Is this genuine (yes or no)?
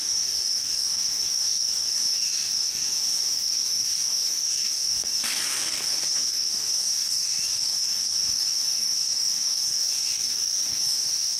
no